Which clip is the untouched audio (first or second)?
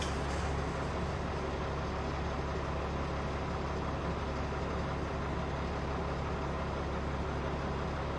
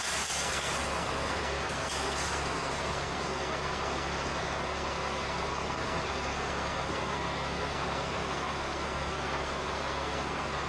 first